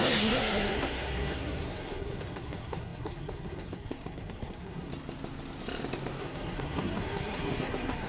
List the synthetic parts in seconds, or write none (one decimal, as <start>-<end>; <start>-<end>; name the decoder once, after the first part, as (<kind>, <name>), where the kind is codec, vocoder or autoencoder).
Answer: 0.0-4.9 (codec, SNAC); 6.2-8.1